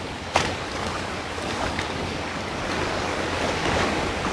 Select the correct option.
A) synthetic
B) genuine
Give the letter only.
A